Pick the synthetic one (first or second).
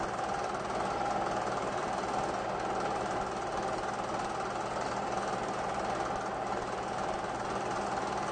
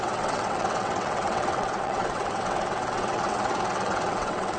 second